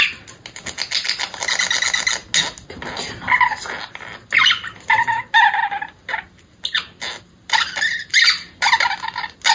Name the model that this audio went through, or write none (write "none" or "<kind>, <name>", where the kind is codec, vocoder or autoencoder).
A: none